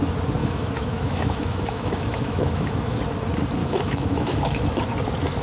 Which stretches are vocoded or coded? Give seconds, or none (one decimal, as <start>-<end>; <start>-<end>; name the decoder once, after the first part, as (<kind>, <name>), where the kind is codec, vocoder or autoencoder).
0.4-3.0 (autoencoder, DAC-VAE); 3.6-4.7